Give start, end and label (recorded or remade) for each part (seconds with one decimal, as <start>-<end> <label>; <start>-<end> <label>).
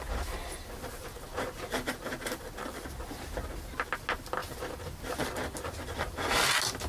0.0-6.9 recorded